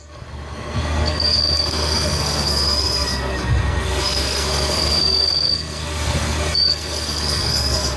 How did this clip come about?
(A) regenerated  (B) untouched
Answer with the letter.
A